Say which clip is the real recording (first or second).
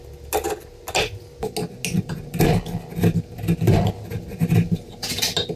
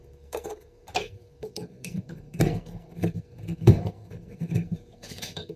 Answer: first